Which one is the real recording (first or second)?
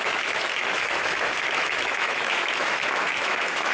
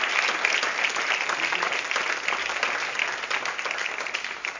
second